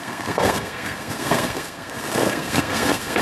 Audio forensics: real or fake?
fake